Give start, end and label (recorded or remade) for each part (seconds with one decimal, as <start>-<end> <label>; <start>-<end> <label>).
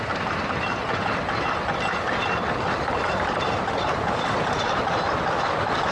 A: 0.0-2.2 recorded; 2.2-5.9 remade